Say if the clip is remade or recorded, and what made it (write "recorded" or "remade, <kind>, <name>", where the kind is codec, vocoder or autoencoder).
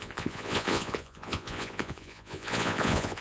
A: remade, vocoder, Vocos